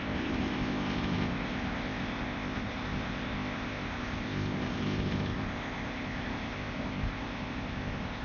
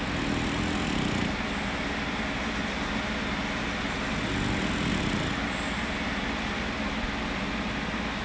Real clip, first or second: second